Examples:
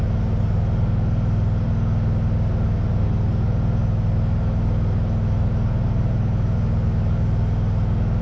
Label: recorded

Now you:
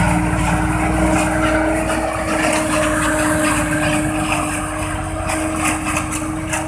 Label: recorded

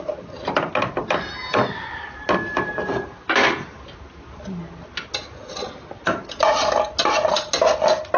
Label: recorded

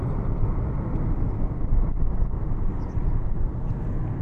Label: recorded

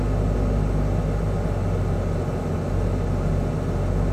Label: recorded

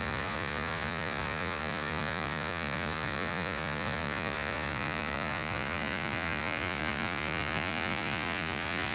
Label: remade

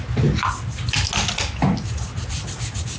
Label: recorded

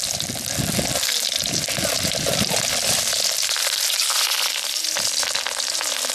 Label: recorded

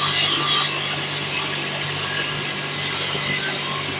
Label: recorded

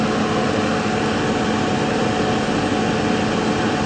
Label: recorded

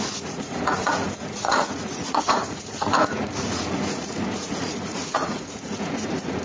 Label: remade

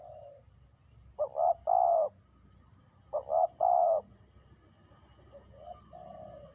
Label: recorded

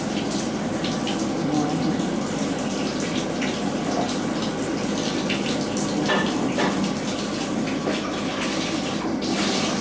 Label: recorded